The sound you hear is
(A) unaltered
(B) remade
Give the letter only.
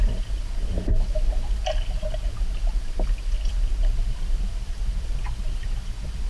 A